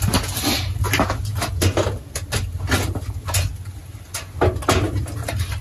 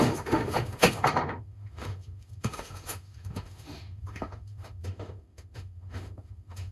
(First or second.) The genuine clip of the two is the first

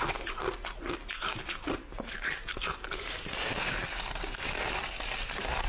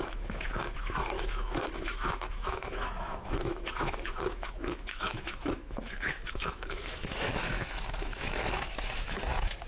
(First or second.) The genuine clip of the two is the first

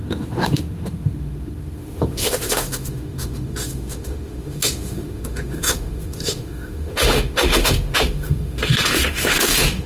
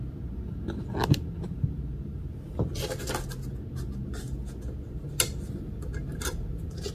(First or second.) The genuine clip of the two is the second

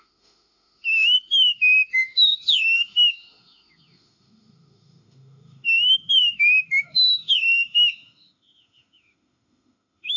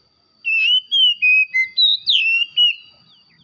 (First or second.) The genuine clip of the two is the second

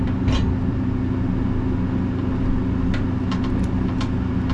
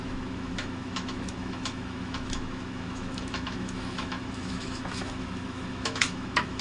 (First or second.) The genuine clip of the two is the first